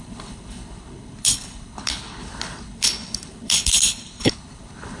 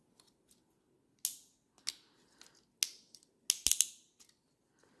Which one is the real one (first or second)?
second